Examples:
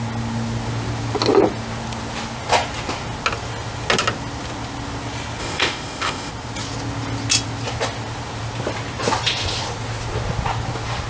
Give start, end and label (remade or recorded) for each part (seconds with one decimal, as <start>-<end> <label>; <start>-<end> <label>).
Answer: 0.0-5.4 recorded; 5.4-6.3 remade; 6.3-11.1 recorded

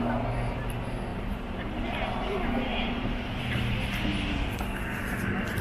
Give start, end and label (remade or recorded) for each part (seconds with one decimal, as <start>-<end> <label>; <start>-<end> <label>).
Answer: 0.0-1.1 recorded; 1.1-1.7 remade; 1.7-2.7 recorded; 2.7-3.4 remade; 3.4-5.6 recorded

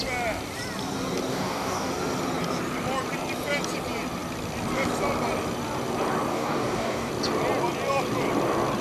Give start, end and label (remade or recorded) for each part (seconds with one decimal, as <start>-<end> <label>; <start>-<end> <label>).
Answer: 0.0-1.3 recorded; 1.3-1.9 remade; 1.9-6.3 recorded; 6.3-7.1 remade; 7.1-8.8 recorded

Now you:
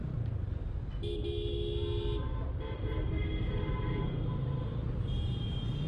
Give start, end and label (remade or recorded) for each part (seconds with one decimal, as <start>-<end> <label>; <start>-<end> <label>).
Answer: 0.0-2.8 recorded; 2.8-5.9 remade

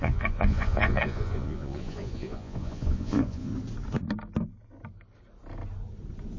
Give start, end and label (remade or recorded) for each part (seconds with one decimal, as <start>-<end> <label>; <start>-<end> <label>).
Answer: 0.0-3.5 remade; 3.5-6.4 recorded

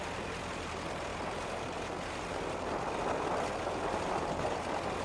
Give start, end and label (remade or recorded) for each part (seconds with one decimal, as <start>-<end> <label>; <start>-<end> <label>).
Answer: 0.0-5.0 recorded

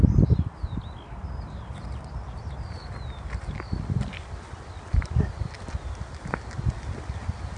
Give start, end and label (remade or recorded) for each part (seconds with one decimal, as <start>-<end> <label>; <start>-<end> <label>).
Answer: 0.0-7.6 recorded

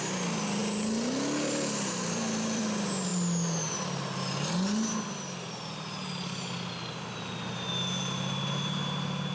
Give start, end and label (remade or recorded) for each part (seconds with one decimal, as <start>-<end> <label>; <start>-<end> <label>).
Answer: 0.0-0.6 recorded; 0.6-2.6 remade; 2.6-9.3 recorded